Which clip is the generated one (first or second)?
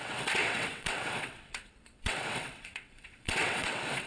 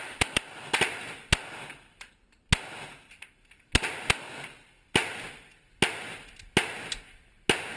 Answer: first